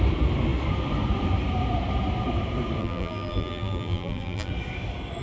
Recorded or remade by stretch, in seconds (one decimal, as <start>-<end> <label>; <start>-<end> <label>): 0.0-2.8 recorded; 2.8-4.5 remade; 4.5-5.2 recorded